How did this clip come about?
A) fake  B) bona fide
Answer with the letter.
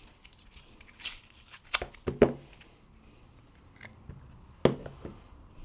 B